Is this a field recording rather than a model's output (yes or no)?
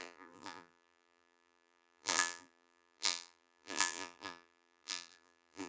no